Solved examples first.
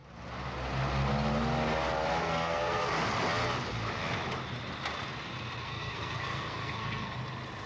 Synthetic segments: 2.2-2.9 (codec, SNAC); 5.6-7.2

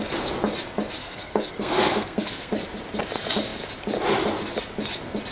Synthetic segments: 1.0-2.5 (codec, SNAC)